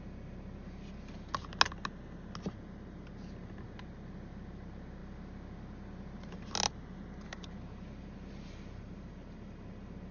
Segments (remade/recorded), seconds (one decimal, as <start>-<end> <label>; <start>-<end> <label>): 0.0-10.1 recorded